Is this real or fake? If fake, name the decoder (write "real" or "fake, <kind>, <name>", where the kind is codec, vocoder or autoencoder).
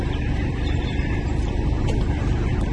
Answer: fake, vocoder, BigVGAN v2